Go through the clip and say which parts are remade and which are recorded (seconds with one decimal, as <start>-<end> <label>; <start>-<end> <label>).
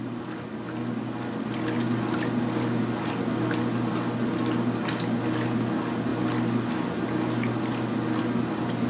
0.0-8.9 recorded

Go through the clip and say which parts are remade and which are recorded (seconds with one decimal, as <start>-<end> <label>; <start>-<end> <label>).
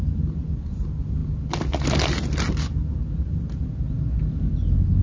0.0-5.0 recorded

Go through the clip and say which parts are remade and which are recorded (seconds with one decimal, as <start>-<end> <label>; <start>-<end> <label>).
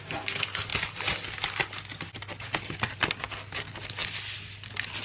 0.0-5.0 recorded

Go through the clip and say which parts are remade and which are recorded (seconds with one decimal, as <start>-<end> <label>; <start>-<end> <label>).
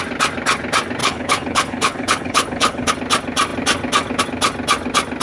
0.0-1.0 recorded; 1.0-2.9 remade; 2.9-5.2 recorded